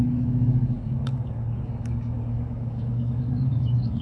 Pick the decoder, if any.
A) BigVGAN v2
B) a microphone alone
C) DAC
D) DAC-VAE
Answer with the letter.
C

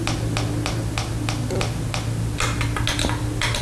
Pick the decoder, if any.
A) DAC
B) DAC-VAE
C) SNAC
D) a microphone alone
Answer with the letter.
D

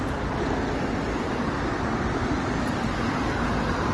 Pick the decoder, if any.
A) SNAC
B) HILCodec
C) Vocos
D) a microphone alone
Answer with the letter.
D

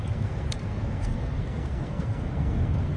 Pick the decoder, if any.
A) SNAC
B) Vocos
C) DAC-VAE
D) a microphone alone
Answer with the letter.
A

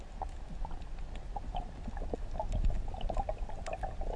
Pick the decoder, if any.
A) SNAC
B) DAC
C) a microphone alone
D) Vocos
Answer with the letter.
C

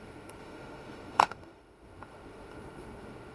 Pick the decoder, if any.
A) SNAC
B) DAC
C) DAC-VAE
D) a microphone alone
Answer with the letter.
C